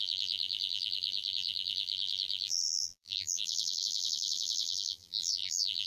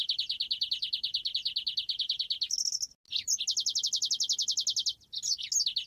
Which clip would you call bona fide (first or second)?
second